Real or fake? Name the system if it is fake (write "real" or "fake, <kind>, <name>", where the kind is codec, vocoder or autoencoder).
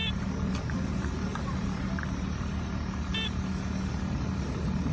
real